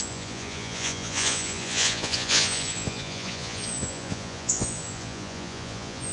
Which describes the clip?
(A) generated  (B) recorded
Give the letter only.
A